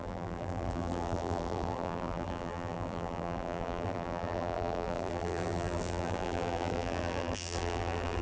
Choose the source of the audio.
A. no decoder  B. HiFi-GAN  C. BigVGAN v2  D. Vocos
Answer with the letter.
C